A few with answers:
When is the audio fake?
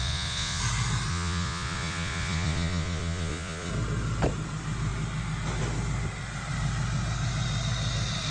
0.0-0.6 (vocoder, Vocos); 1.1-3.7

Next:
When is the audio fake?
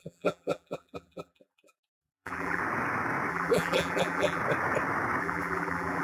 0.0-2.6 (vocoder, BigVGAN v2); 3.3-4.4; 5.2-6.0